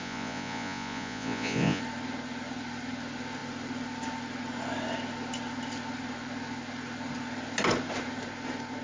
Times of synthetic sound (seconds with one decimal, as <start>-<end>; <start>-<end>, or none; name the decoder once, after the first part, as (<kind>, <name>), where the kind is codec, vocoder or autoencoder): 0.0-1.8 (vocoder, Vocos)